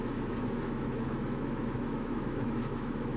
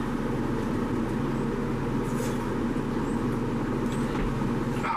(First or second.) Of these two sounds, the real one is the second